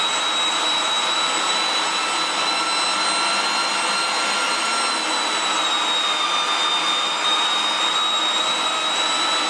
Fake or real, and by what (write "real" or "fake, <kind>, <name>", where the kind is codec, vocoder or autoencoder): real